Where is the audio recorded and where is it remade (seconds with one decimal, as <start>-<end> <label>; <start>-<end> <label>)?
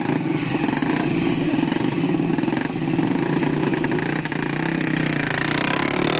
0.0-2.3 remade; 2.3-6.2 recorded